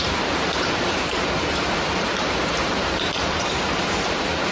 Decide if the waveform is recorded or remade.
remade